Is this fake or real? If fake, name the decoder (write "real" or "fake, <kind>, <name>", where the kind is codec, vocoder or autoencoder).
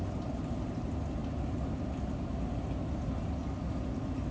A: real